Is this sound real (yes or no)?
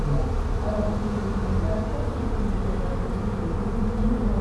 yes